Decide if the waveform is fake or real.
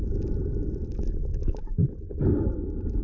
real